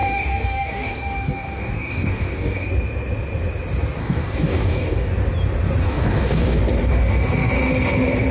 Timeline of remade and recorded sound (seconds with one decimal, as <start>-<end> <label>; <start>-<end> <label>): 0.0-2.7 remade; 2.7-4.0 recorded; 4.0-5.1 remade; 5.1-5.8 recorded; 5.8-6.6 remade; 6.6-8.3 recorded